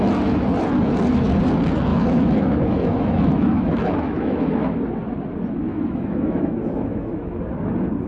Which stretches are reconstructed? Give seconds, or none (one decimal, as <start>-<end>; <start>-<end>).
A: 1.9-4.8; 5.7-7.4